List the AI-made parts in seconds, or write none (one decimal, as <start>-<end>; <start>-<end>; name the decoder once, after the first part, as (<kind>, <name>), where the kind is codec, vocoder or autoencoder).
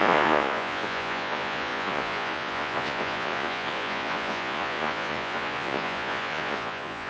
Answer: 0.0-7.1 (vocoder, Vocos)